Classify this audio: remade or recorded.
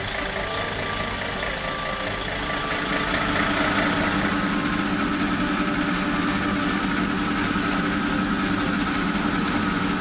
recorded